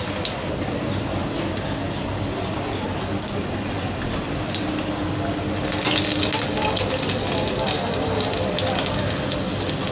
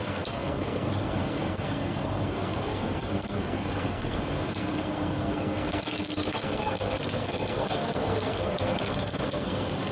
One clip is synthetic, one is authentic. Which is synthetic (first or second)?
second